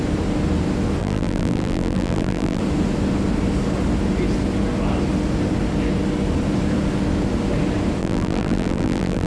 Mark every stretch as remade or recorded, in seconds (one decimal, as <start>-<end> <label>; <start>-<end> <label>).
0.0-1.0 recorded; 1.0-2.6 remade; 2.6-8.0 recorded; 8.0-9.3 remade